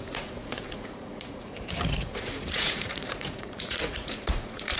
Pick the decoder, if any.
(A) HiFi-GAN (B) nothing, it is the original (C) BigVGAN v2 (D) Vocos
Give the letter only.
D